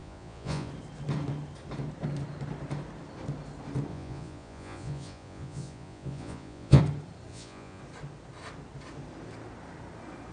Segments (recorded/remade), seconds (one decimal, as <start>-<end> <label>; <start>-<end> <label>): 0.0-0.7 remade; 0.7-3.9 recorded; 3.9-6.8 remade; 6.8-7.3 recorded; 7.3-7.8 remade; 7.8-10.3 recorded